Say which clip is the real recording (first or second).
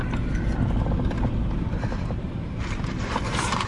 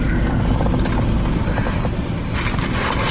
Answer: second